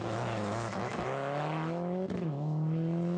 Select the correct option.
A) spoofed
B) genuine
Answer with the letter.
A